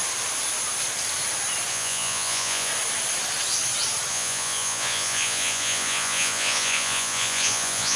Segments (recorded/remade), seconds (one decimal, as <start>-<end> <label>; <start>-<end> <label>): 0.0-1.7 recorded; 1.7-2.7 remade; 2.7-4.1 recorded; 4.1-8.0 remade